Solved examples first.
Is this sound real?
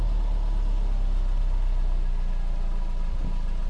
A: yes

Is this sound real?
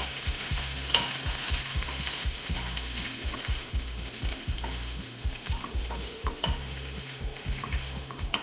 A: no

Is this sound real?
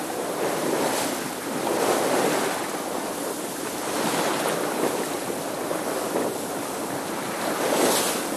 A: yes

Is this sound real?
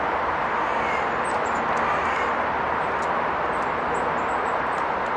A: yes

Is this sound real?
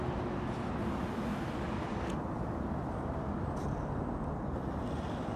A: yes